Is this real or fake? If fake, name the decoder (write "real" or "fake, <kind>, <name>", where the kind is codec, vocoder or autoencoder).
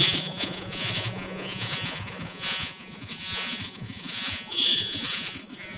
fake, vocoder, Vocos